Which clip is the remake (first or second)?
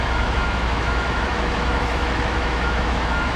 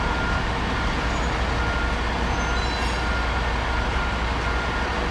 first